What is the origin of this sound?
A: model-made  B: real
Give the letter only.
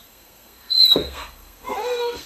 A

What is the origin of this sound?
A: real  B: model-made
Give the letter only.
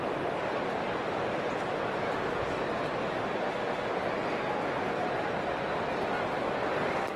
A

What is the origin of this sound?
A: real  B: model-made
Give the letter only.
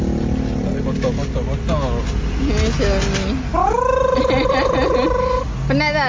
A